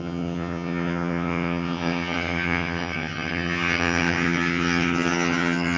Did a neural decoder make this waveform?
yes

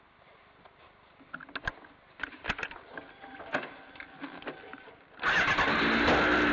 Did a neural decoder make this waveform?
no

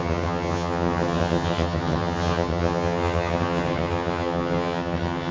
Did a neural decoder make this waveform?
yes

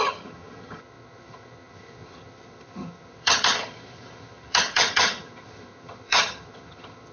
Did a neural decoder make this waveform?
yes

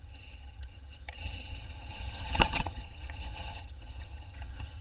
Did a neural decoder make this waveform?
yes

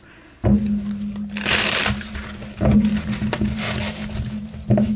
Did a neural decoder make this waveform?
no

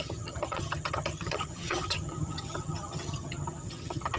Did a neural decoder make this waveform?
yes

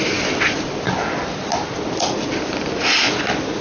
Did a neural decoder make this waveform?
no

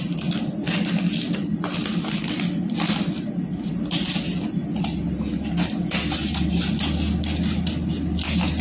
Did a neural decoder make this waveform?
no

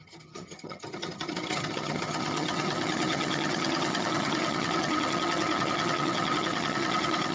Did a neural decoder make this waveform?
yes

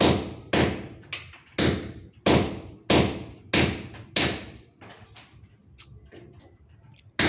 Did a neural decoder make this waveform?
no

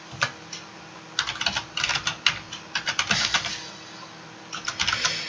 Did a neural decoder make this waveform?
no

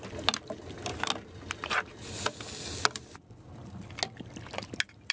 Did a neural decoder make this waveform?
no